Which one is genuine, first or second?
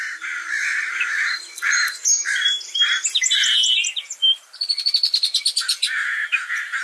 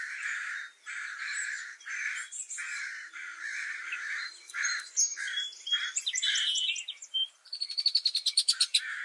first